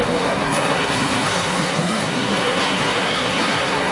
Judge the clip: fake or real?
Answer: fake